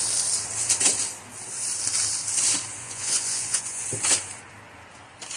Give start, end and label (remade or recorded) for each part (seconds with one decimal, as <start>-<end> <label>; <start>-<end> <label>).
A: 0.0-2.8 recorded; 2.8-3.8 remade; 3.8-5.4 recorded